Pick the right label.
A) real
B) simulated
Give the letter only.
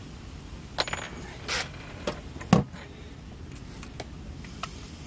A